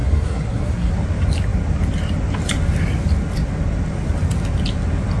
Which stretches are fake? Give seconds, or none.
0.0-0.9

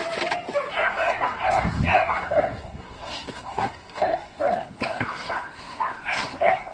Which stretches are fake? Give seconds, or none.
0.7-6.7

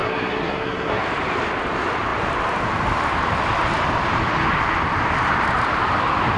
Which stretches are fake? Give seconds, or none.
0.0-1.0

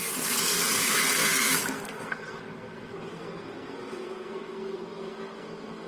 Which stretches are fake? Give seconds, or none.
0.0-5.9

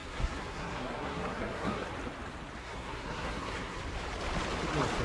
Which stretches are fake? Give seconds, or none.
0.0-1.9; 2.6-3.8